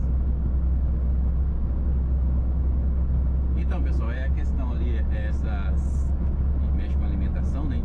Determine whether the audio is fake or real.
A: real